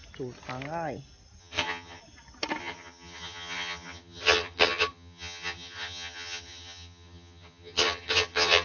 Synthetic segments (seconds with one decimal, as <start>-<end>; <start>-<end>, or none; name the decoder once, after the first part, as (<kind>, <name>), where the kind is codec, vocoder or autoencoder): 1.4-2.0 (vocoder, HiFi-GAN); 2.6-8.6